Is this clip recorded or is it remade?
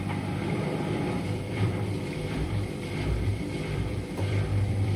remade